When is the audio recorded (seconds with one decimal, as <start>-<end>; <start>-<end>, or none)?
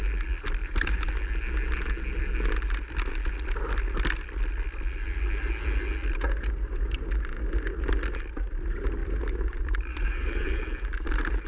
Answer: 0.0-0.6; 1.1-9.0; 10.6-11.5